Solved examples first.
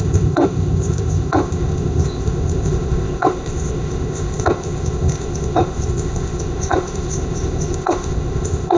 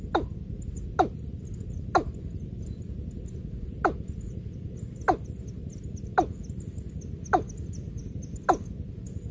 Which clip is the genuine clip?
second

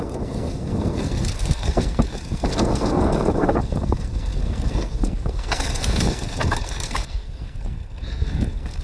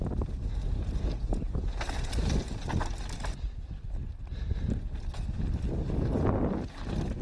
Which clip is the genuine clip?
second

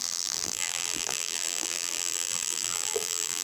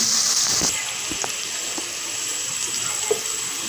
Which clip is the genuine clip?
second